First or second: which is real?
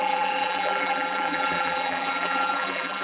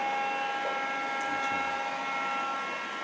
second